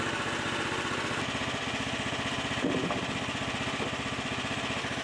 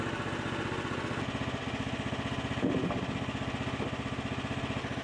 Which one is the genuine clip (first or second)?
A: second